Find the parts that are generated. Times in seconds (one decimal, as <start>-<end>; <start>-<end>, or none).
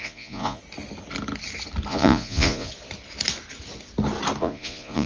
0.0-0.6; 1.9-2.7; 4.4-5.1